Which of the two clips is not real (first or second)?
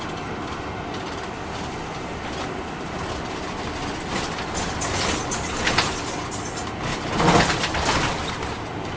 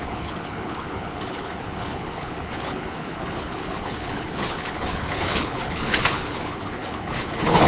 second